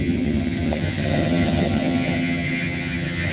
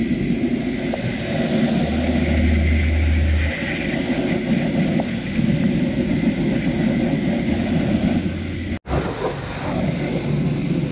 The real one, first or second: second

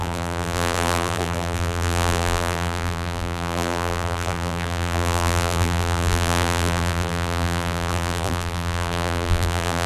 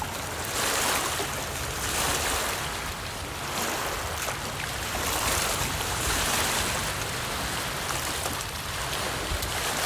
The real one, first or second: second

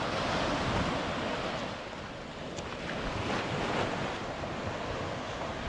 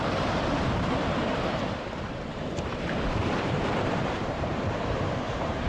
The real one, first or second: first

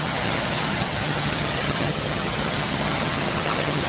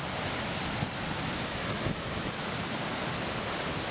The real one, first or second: second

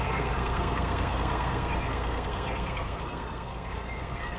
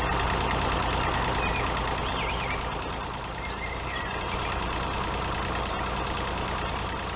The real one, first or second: second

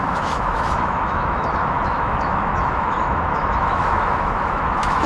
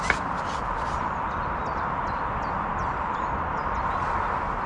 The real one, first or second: second